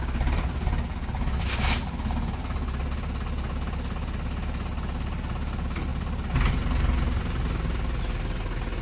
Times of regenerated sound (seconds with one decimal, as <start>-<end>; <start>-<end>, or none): none